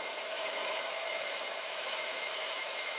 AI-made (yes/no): yes